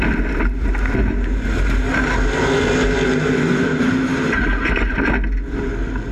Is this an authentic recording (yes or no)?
yes